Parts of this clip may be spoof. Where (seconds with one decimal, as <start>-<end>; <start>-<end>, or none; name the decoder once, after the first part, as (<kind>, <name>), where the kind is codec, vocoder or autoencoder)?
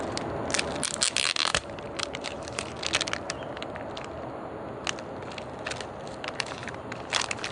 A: 1.5-2.7 (vocoder, BigVGAN v2); 6.6-7.1